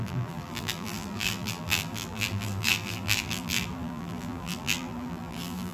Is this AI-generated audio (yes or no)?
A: yes